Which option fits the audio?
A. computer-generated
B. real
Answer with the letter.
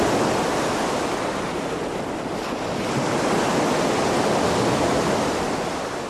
B